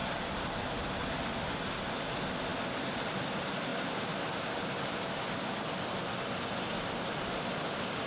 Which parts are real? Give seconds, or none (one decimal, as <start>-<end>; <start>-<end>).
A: 0.0-8.1